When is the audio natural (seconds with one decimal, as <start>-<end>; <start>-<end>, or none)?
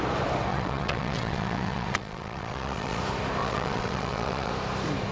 0.0-0.5; 3.0-3.4; 4.5-5.1